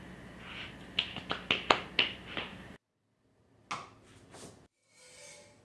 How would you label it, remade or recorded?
recorded